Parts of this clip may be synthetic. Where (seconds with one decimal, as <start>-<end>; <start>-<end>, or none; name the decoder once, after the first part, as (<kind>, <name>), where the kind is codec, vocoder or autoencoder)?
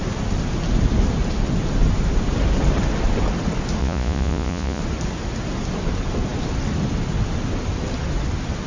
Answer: 3.8-4.8 (vocoder, Vocos)